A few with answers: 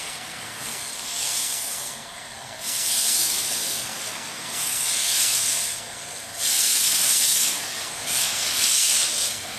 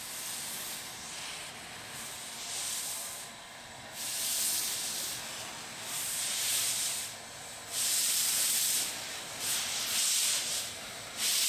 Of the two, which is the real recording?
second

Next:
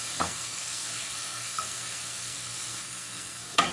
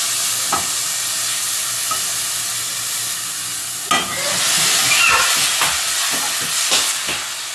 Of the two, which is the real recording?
second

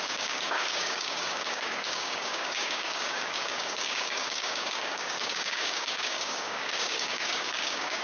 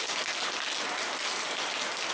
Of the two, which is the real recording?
second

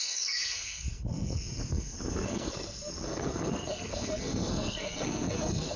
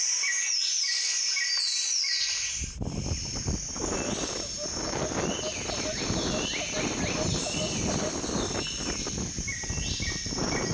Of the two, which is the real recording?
second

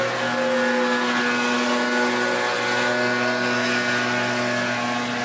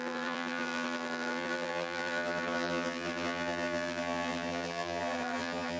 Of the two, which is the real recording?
first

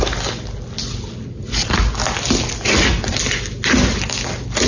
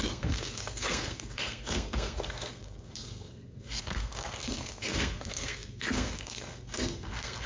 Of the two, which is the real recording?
first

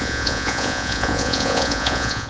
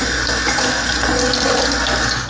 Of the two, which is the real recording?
second